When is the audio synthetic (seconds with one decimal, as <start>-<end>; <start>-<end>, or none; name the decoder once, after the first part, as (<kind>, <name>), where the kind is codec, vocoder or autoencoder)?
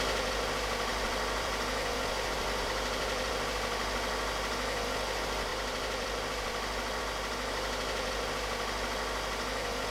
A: 0.9-3.3 (vocoder, BigVGAN v2); 5.5-7.0